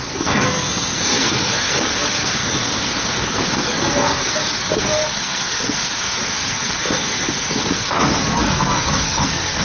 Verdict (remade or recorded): remade